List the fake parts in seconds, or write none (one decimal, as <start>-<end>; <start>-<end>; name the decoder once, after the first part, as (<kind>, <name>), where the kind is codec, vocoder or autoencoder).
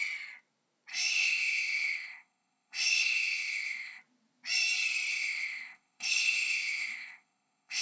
0.9-4.0 (codec, ZipCodec); 5.1-7.8